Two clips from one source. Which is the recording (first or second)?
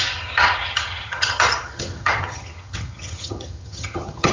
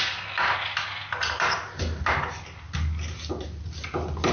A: second